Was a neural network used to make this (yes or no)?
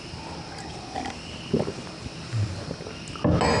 no